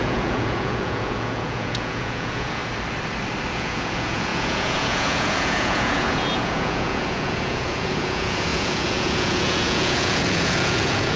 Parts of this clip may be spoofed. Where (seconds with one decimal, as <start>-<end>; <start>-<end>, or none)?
0.0-2.6; 3.5-11.2